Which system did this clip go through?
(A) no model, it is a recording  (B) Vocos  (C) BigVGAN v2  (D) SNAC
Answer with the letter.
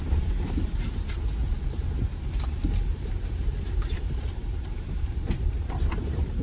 C